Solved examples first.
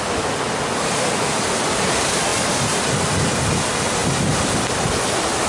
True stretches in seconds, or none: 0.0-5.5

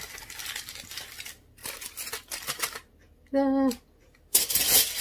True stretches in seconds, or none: 0.0-5.0

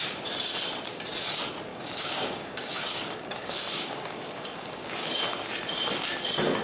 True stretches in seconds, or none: 0.0-1.7; 5.1-6.6

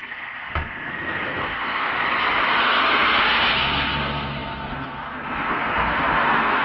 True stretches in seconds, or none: 1.9-2.6

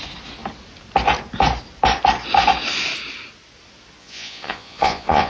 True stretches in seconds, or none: 0.0-4.0